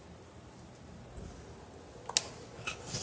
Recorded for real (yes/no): yes